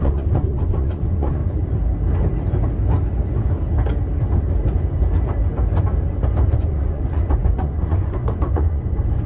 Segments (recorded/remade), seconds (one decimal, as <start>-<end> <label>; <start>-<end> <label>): 0.0-1.4 remade; 1.4-6.1 recorded; 6.1-9.3 remade